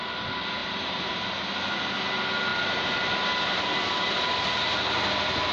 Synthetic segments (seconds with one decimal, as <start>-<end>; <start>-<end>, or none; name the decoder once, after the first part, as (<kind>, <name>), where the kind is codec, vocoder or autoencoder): 0.6-1.2 (vocoder, BigVGAN v2)